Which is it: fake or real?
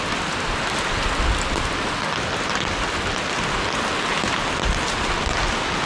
real